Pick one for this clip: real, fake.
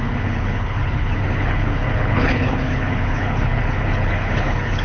fake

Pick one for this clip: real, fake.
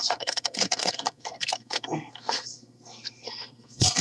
fake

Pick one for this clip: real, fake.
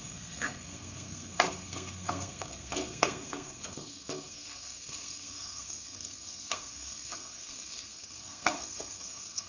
fake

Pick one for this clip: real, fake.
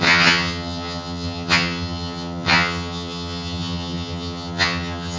fake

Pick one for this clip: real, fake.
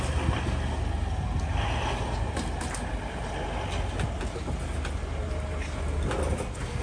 real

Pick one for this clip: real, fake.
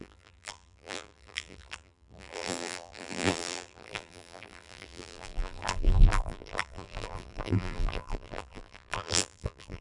fake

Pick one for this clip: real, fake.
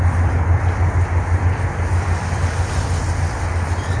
real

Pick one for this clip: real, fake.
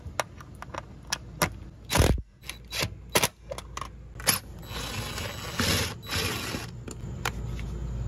real